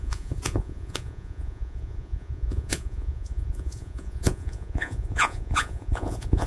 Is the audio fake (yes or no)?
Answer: yes